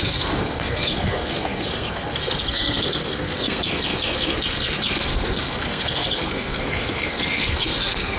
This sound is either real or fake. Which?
fake